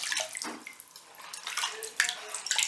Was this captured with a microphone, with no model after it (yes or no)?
yes